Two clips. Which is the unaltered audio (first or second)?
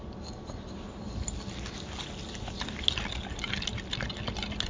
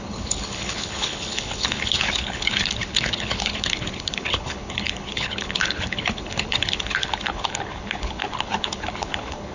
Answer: first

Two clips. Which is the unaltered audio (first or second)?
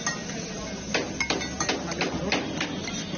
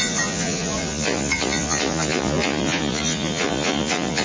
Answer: first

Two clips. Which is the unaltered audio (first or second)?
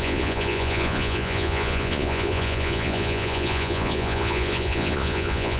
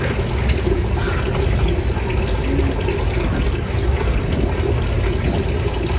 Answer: second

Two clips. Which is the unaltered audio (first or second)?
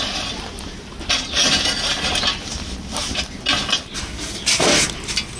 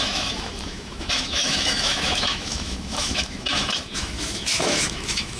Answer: first